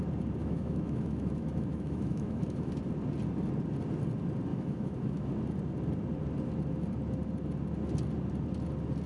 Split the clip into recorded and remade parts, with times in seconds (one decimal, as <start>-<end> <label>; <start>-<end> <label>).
0.0-0.4 recorded; 0.4-2.8 remade; 2.8-4.5 recorded; 4.5-5.3 remade; 5.3-9.1 recorded